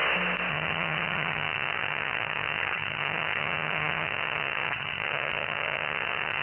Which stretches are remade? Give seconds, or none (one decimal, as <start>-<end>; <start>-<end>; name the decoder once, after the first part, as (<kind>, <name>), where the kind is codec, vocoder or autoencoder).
0.5-6.4 (vocoder, HiFi-GAN)